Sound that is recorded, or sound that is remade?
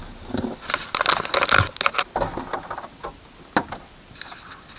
recorded